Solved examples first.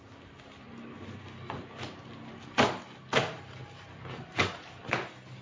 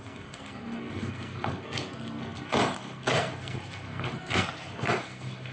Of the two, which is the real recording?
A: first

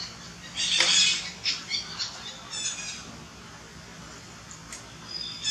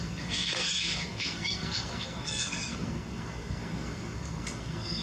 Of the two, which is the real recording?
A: first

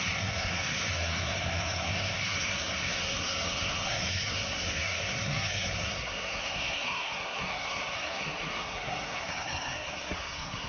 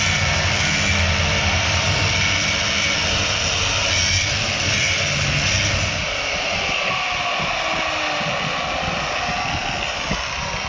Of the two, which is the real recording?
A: second